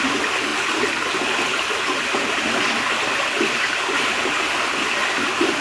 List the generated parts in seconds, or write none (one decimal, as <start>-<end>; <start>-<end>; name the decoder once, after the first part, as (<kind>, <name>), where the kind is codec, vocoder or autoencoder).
none

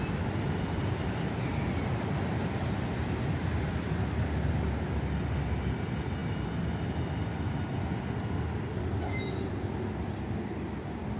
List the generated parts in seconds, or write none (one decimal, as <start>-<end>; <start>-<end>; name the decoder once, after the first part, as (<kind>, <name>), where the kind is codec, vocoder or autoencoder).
none

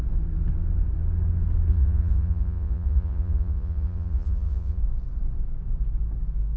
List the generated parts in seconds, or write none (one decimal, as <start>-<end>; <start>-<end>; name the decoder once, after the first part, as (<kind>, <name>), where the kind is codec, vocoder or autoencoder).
1.7-4.8 (vocoder, Vocos)